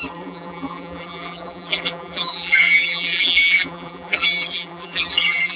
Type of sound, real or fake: fake